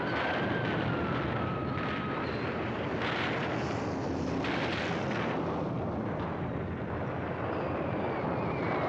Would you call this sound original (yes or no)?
yes